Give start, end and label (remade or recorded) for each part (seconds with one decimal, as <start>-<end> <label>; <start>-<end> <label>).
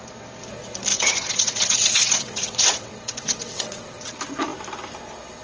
0.0-0.9 recorded; 0.9-4.1 remade; 4.1-5.4 recorded